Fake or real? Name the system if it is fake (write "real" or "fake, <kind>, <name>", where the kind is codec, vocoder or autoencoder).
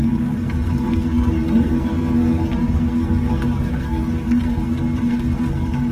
fake, codec, SNAC